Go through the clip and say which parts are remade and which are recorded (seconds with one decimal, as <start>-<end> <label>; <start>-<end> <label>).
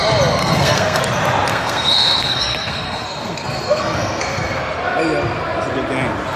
0.0-0.4 recorded; 0.4-1.0 remade; 1.0-1.5 recorded; 1.5-4.6 remade; 4.6-6.4 recorded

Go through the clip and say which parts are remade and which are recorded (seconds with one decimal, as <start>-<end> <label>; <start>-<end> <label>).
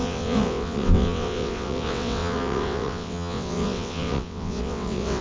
0.0-5.2 remade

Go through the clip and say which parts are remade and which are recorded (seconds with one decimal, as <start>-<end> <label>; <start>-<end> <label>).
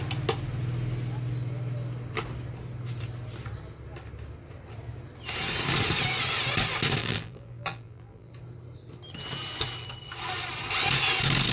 0.0-7.0 recorded; 7.0-8.3 remade; 8.3-11.5 recorded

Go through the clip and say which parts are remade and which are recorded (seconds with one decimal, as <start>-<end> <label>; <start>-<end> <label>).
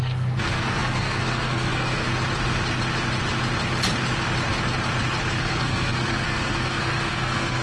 0.0-2.1 remade; 2.1-5.4 recorded; 5.4-7.6 remade